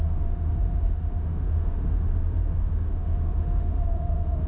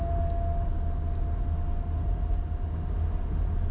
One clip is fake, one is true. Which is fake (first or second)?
first